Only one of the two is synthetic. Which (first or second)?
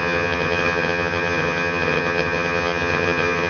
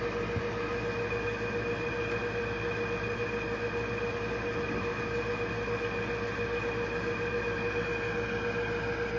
first